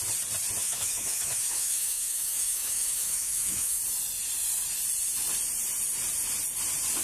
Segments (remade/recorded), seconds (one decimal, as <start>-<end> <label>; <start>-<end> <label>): 0.0-0.6 recorded; 0.6-3.8 remade; 3.8-7.0 recorded